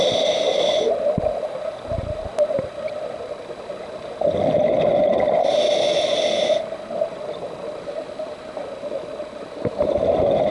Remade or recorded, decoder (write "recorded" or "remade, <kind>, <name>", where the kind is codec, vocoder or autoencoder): recorded